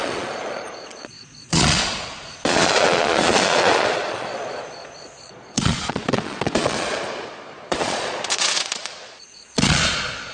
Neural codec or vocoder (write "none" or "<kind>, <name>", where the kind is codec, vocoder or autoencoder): vocoder, Vocos